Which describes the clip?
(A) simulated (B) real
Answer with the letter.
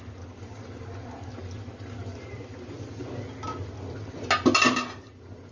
B